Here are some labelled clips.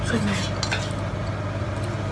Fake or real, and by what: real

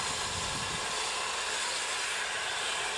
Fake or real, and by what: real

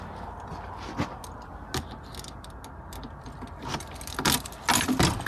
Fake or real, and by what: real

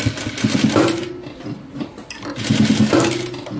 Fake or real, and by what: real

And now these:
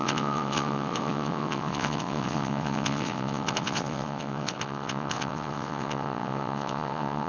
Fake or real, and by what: fake, vocoder, WaveNeXt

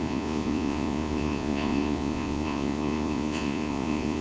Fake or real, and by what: fake, vocoder, Vocos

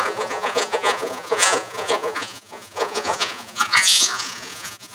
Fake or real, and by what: fake, vocoder, Vocos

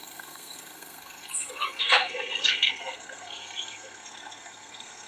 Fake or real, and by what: fake, codec, SNAC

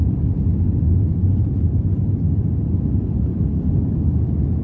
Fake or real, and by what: real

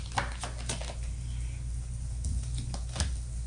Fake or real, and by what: real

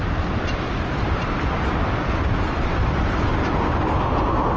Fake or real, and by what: real